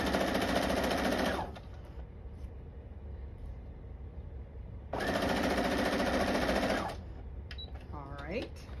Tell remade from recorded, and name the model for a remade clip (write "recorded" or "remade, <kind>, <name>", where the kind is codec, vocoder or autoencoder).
recorded